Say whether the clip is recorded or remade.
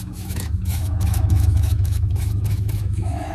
remade